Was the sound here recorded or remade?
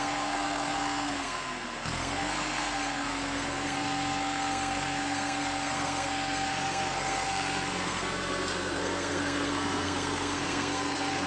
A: remade